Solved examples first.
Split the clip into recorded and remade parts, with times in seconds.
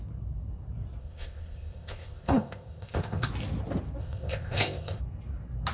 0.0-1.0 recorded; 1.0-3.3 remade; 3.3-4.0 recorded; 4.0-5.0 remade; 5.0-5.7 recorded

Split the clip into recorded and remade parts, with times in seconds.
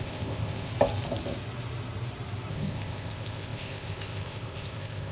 0.0-0.7 remade; 0.7-2.5 recorded; 2.5-5.1 remade